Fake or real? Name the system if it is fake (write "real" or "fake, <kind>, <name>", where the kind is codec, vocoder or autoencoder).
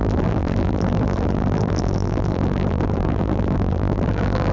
fake, vocoder, BigVGAN v2